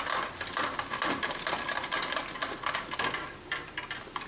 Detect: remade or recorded recorded